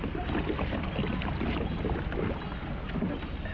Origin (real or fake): real